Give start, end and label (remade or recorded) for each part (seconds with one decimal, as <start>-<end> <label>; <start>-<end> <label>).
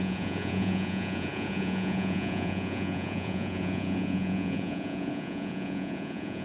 0.0-6.4 remade